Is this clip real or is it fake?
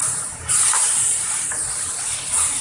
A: fake